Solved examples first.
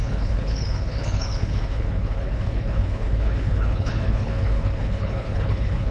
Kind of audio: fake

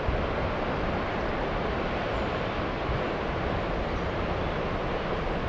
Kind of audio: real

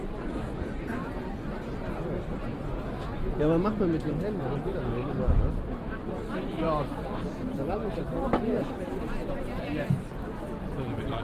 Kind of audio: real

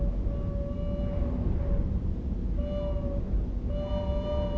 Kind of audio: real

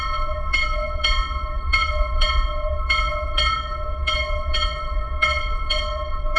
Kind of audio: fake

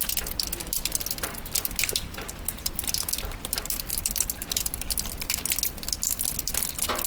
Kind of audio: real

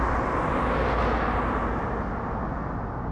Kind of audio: real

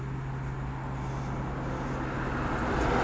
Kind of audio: real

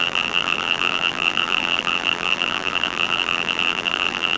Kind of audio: fake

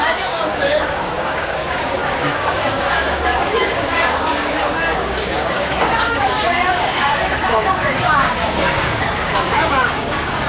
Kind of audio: fake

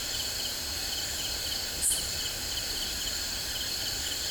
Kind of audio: real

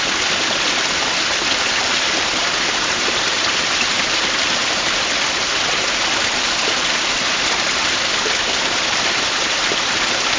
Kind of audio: fake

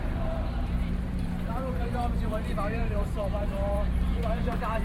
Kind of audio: fake